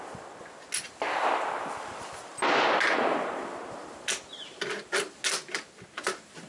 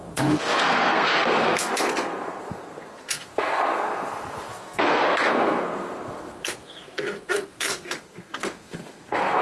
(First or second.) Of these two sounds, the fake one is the second